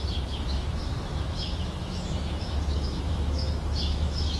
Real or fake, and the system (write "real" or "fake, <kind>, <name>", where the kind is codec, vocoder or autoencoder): fake, autoencoder, DAC-VAE